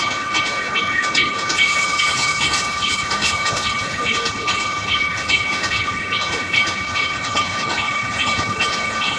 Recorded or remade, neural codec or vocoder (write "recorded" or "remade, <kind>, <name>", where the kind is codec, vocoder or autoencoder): remade, codec, HILCodec